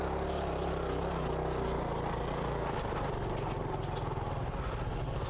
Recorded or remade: recorded